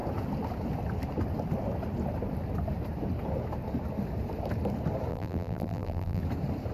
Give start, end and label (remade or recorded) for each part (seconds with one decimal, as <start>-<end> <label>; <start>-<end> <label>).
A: 0.0-5.1 recorded; 5.1-6.2 remade; 6.2-6.7 recorded